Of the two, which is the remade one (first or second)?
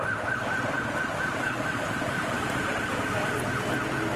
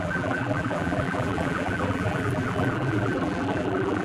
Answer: second